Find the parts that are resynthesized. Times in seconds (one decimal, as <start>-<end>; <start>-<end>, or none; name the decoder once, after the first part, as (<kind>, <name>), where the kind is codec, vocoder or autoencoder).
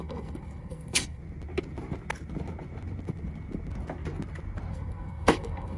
0.0-1.2 (codec, SNAC); 4.7-5.8